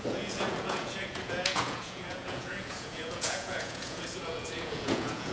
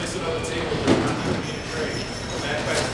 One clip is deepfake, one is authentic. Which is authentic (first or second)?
second